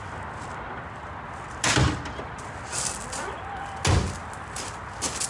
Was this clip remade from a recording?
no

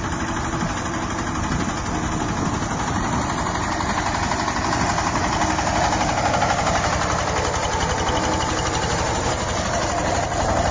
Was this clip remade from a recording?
no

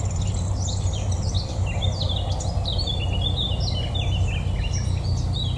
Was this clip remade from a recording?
no